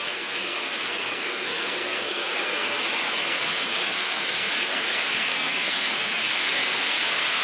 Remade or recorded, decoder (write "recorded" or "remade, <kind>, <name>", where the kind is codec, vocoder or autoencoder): remade, codec, SNAC